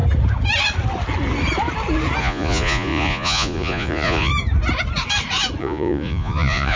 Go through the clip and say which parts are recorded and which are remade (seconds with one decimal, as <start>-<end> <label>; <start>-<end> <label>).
0.0-2.2 recorded; 2.2-4.3 remade; 4.3-5.6 recorded; 5.6-6.8 remade